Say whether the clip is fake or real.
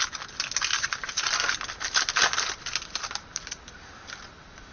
real